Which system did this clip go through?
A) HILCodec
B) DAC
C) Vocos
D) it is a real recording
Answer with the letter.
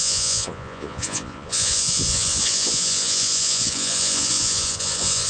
C